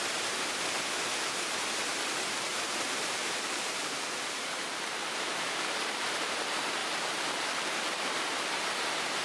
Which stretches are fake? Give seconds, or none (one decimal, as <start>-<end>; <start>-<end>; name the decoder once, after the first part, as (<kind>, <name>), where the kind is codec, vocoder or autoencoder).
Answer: 2.5-5.7 (vocoder, BigVGAN v2); 6.8-8.5